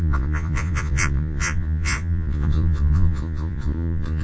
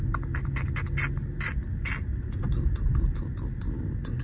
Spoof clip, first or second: first